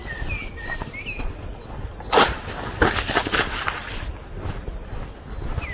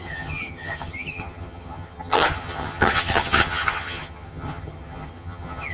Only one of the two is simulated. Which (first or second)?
second